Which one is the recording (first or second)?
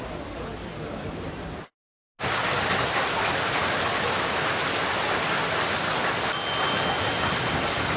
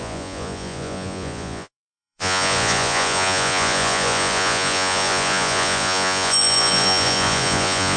first